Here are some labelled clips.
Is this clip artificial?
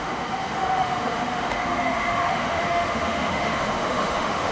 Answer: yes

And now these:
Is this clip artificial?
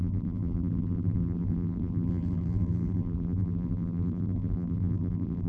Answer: yes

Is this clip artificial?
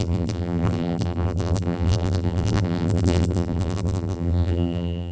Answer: yes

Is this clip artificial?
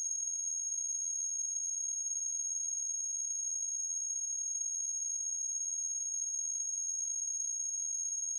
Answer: yes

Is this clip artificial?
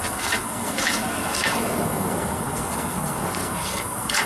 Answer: yes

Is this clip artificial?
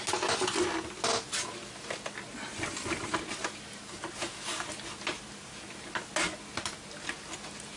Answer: no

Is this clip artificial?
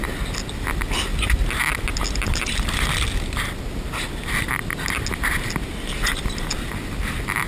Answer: no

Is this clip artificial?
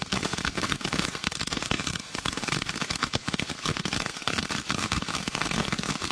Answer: yes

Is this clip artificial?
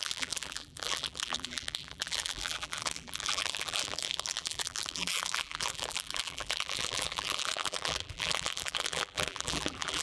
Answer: yes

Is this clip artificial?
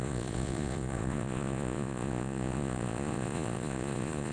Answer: yes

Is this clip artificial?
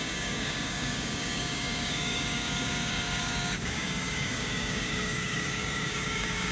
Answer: yes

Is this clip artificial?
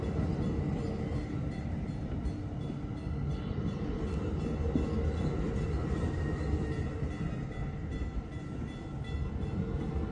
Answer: no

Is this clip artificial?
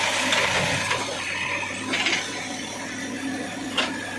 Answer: no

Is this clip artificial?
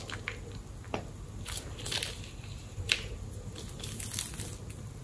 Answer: no